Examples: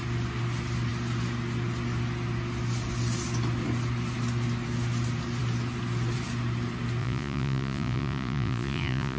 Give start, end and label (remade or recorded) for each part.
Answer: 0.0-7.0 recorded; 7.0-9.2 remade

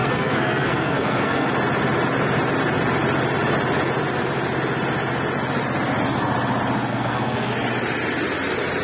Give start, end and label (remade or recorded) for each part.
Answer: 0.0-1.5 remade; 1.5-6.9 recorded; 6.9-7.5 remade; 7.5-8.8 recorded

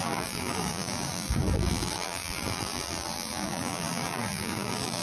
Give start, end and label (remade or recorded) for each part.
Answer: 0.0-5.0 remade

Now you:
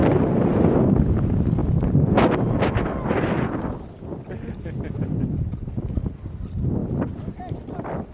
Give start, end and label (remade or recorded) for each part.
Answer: 0.0-8.1 recorded

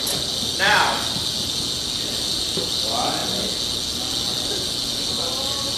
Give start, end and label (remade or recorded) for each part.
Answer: 0.0-5.8 recorded

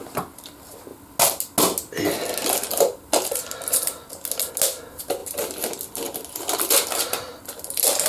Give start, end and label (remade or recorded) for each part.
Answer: 0.0-8.1 recorded

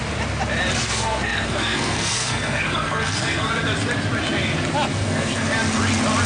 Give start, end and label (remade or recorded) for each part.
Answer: 0.0-0.8 recorded; 0.8-3.5 remade; 3.5-4.9 recorded; 4.9-5.5 remade; 5.5-6.3 recorded